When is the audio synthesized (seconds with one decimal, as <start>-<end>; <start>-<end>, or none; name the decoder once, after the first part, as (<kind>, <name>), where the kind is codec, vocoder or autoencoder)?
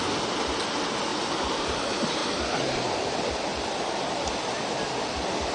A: none